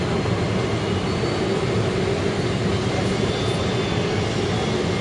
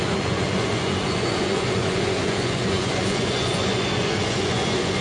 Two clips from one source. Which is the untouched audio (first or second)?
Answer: first